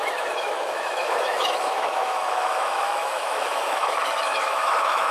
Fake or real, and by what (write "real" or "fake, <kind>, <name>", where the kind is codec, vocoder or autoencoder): fake, autoencoder, DAC-VAE